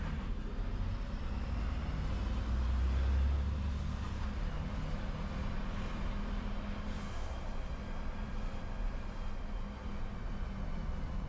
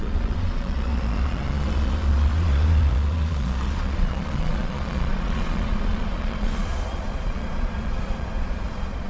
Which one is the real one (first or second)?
first